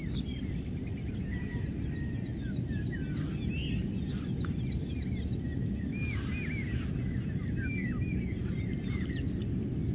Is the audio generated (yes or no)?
no